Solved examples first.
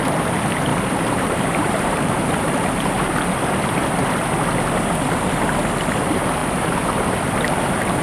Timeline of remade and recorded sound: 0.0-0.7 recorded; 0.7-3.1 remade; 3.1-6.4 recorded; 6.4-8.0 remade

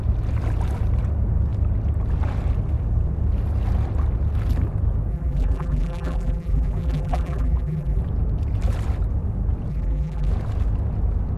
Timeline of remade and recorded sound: 0.0-5.1 recorded; 5.1-8.0 remade; 8.0-9.7 recorded; 9.7-10.3 remade; 10.3-11.4 recorded